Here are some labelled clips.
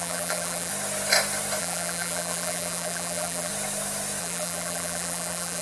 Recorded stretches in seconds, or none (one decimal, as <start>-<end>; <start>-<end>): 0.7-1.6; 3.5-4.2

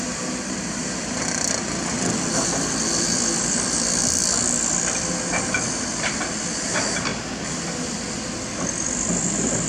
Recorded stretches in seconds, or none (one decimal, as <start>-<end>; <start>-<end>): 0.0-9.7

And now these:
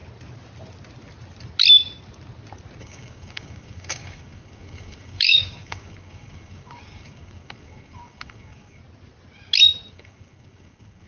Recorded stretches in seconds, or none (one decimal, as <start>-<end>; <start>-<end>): 0.0-2.8; 8.8-9.9